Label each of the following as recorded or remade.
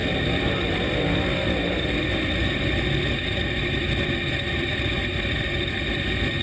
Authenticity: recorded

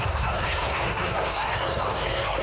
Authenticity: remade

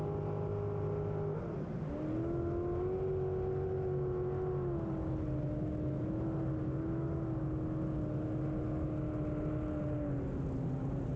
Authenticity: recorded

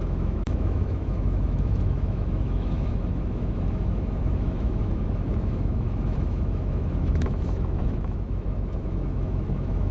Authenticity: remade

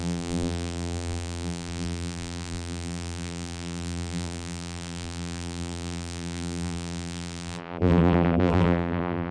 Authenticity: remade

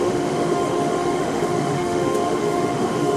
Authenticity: remade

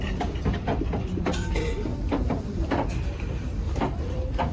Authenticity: remade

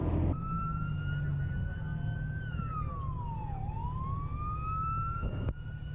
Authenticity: recorded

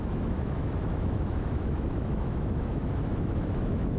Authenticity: remade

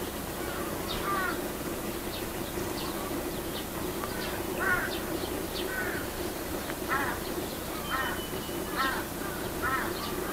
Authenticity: recorded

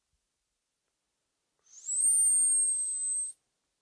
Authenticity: recorded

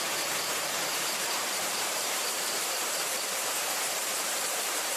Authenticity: remade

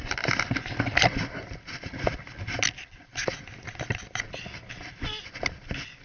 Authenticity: recorded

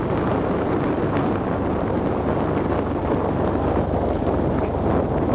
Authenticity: recorded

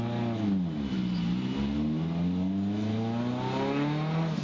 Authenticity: recorded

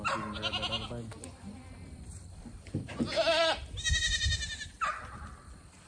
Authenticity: recorded